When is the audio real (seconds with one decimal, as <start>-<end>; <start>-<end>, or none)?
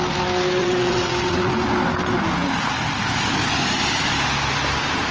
0.0-0.6; 1.5-5.1